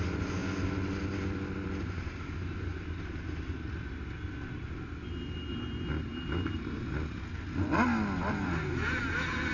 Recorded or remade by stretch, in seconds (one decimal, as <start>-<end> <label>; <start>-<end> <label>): 0.0-9.5 recorded